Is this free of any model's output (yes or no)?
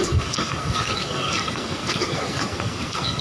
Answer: no